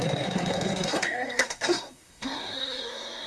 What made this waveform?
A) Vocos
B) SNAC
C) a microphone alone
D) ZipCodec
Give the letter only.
B